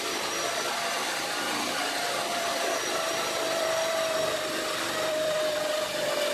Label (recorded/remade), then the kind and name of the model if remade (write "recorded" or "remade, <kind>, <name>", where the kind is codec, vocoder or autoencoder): remade, vocoder, BigVGAN v2